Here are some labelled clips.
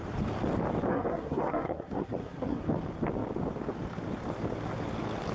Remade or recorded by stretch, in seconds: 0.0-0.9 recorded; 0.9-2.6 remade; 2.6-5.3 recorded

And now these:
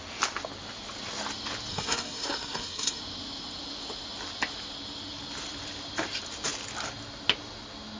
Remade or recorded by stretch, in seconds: 0.0-1.7 recorded; 1.7-3.0 remade; 3.0-8.0 recorded